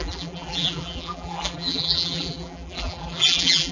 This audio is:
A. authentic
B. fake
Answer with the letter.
B